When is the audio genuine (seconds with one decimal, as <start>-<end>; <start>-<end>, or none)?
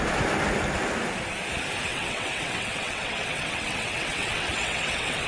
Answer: 0.0-1.9